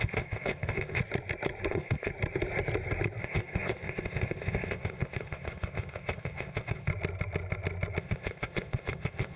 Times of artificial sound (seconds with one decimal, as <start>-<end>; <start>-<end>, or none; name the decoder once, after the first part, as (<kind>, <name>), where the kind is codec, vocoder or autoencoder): 0.0-1.0 (codec, ZipCodec); 1.7-2.1; 3.2-6.9; 8.0-9.4